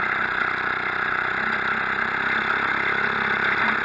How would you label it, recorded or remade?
recorded